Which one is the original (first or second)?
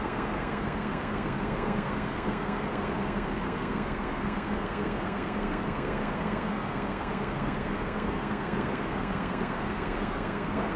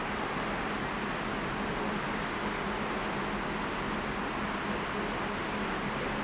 second